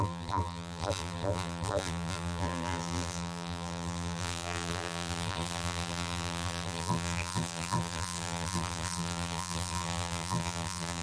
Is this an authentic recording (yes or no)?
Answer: no